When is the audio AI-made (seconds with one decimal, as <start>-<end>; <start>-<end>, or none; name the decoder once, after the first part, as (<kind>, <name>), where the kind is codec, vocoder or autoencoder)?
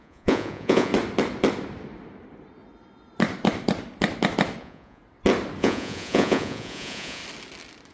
0.0-0.9 (vocoder, Vocos); 4.6-5.0; 5.6-7.2